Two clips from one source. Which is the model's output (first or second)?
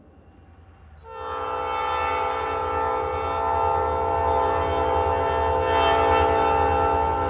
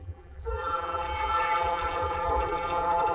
second